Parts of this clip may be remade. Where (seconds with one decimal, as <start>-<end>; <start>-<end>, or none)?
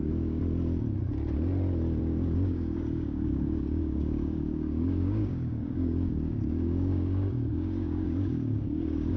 0.0-0.4; 2.0-9.2